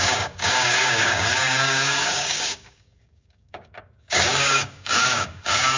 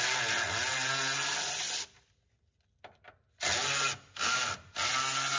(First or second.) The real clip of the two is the second